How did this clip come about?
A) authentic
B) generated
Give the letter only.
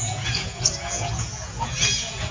B